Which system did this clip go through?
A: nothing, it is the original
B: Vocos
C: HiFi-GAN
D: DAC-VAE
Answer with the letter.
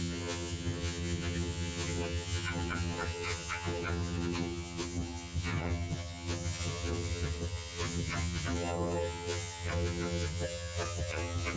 C